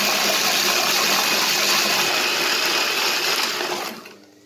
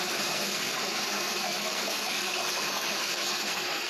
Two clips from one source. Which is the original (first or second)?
first